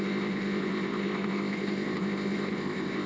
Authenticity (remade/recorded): remade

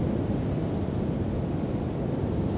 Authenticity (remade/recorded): recorded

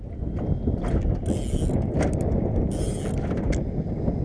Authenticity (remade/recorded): recorded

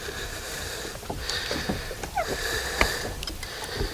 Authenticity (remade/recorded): recorded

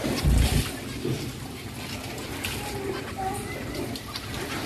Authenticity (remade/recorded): remade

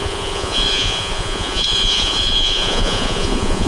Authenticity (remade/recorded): remade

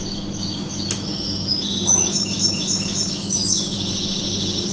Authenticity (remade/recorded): remade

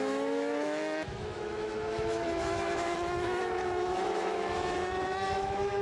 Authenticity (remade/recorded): remade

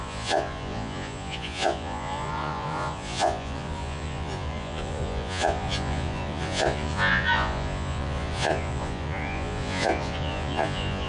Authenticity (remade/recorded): remade